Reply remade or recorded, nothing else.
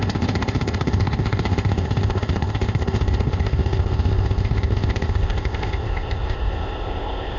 remade